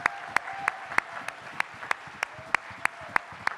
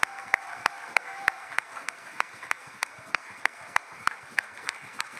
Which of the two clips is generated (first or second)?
second